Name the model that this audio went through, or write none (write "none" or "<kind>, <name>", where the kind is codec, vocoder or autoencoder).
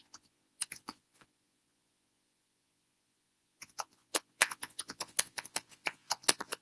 vocoder, Vocos